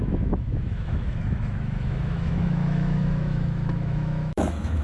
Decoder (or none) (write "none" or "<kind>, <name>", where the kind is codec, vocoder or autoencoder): autoencoder, DAC-VAE